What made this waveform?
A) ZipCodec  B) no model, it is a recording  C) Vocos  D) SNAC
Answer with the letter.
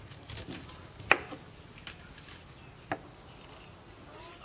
B